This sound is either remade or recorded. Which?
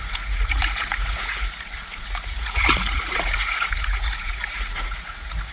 remade